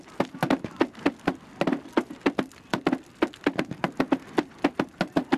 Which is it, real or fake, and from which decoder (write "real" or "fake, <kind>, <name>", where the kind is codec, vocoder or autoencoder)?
real